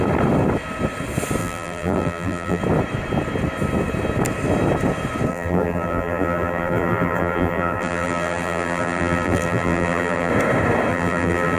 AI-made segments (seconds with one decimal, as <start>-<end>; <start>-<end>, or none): 1.4-2.6; 5.3-10.3; 10.9-11.6